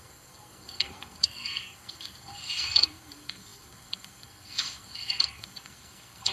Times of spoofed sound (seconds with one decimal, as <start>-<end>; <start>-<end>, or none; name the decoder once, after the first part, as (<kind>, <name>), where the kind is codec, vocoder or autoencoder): 0.0-6.3 (codec, SNAC)